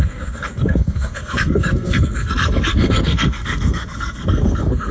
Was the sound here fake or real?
fake